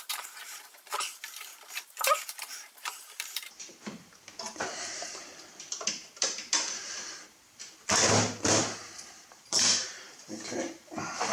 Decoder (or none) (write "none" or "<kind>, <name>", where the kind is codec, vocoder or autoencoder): vocoder, BigVGAN v2